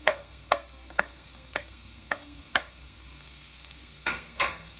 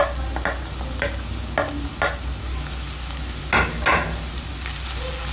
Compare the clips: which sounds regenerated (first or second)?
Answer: first